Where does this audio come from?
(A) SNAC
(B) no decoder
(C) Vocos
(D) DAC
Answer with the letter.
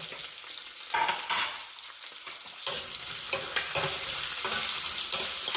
B